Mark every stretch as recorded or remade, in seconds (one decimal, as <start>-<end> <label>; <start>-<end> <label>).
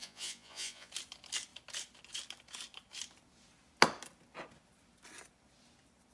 0.0-0.9 remade; 0.9-6.1 recorded